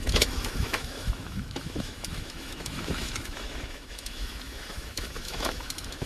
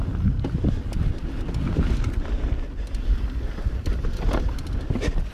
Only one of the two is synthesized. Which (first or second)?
first